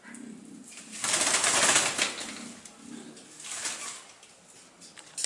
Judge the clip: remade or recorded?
recorded